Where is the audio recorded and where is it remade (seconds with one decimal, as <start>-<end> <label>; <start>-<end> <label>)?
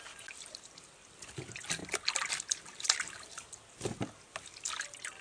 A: 0.0-5.2 recorded